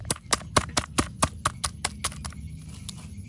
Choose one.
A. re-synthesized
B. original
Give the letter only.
B